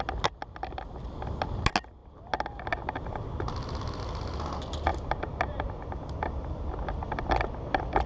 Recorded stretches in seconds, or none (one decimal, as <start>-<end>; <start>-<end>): 0.0-8.1